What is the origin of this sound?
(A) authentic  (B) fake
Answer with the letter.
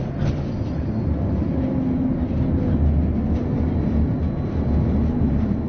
A